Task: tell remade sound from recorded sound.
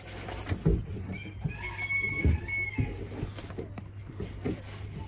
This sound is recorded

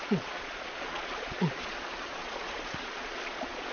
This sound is remade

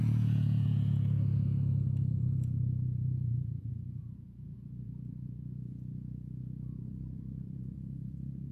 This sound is remade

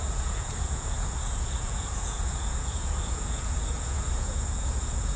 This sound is remade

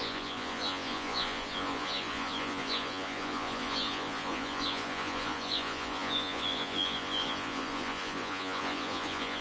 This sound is remade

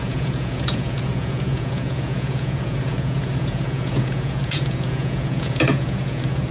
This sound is remade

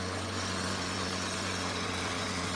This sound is remade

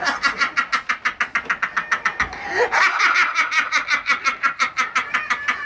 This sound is recorded